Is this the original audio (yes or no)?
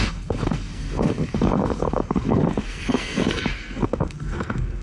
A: no